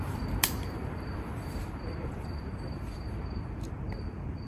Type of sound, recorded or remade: remade